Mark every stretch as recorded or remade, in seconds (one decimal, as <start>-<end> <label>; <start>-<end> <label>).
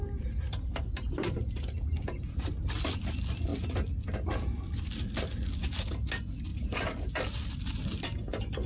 0.0-6.5 recorded; 6.5-7.2 remade; 7.2-8.7 recorded